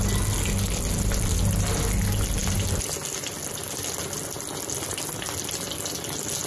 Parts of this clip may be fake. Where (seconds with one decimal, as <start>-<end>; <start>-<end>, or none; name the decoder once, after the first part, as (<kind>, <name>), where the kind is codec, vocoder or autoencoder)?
none